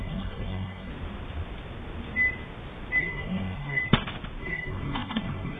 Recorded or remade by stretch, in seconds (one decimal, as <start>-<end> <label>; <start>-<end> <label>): 0.0-0.9 remade; 0.9-3.0 recorded; 3.0-3.8 remade; 3.8-4.4 recorded; 4.4-5.6 remade